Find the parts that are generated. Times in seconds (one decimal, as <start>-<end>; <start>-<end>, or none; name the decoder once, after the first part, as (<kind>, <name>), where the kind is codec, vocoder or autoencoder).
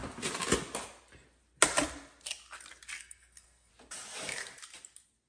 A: 3.0-3.7 (codec, SNAC)